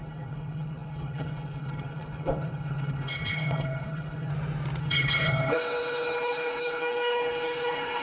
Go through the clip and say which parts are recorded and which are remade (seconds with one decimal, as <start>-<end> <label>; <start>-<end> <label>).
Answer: 0.0-4.3 remade; 4.3-4.8 recorded; 4.8-8.0 remade